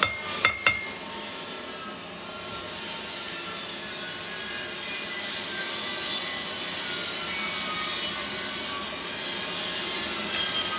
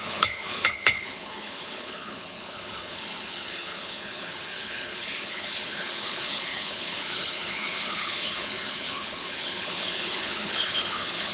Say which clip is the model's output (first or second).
second